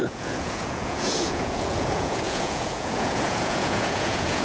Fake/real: fake